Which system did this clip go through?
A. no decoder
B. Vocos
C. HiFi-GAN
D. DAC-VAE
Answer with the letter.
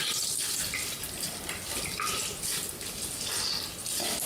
A